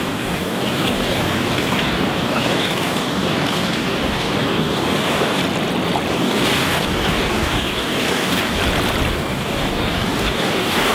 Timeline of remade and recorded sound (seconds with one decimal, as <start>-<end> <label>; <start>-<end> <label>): 0.0-5.4 remade; 5.4-6.1 recorded; 6.1-8.6 remade; 8.6-9.1 recorded; 9.1-10.9 remade